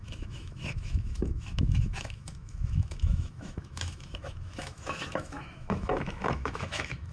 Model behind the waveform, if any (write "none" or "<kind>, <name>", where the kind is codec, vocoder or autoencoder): autoencoder, DAC-VAE